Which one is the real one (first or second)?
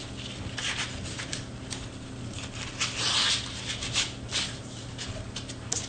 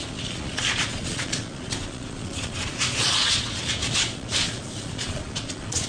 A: first